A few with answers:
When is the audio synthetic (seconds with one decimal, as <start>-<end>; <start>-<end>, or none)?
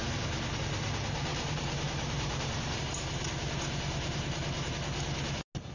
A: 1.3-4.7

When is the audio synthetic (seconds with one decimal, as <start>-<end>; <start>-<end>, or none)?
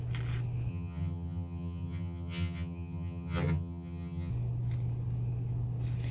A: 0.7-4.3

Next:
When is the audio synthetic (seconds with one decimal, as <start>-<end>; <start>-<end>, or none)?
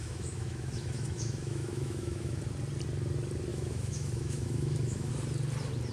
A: 0.0-2.4; 3.5-5.1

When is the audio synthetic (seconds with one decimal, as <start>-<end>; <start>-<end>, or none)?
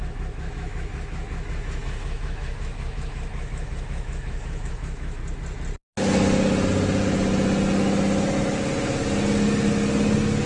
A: 0.0-5.2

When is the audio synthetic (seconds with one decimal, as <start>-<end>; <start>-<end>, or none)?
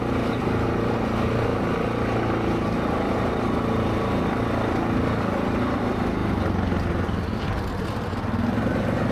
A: none